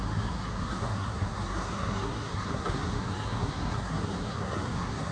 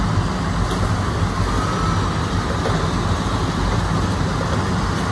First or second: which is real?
second